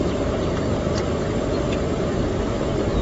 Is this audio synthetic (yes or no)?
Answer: no